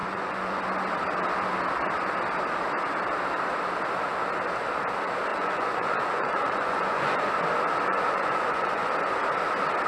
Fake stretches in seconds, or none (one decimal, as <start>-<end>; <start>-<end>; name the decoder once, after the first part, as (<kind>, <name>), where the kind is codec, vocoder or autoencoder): 0.0-0.6 (vocoder, Vocos); 5.3-7.3; 7.9-8.9

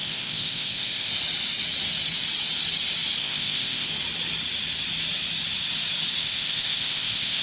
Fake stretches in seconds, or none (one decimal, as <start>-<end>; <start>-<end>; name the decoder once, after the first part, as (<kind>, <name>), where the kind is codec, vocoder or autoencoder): 0.0-1.1 (codec, ZipCodec); 3.2-3.9; 6.2-7.4

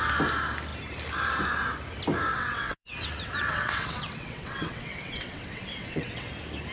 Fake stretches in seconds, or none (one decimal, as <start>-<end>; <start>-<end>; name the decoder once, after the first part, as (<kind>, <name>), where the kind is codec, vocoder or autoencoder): 2.3-6.3 (vocoder, WaveNeXt)

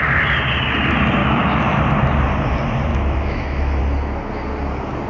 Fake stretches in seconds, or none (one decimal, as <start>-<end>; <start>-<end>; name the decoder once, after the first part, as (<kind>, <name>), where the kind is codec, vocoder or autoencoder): 1.2-1.8 (autoencoder, DAC-VAE); 2.9-3.8

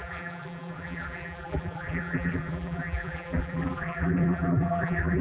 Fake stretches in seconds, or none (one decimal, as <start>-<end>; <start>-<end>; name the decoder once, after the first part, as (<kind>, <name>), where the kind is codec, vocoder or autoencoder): 0.0-5.2 (vocoder, BigVGAN v2)